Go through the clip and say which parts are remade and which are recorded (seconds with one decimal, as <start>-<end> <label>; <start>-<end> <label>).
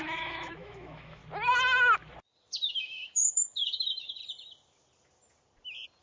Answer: 0.0-1.2 remade; 1.2-2.7 recorded; 2.7-4.2 remade; 4.2-6.0 recorded